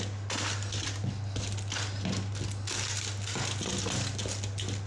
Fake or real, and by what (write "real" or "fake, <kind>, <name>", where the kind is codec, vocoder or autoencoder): real